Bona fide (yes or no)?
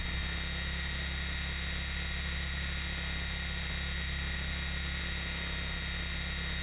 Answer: yes